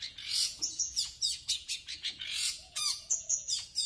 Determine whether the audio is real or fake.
fake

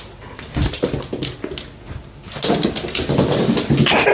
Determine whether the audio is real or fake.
real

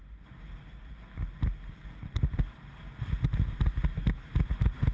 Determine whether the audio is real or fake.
real